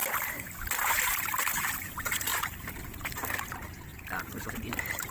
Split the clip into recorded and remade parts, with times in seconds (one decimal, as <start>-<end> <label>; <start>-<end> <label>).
0.0-2.3 recorded; 2.3-2.8 remade; 2.8-3.9 recorded; 3.9-4.5 remade; 4.5-5.1 recorded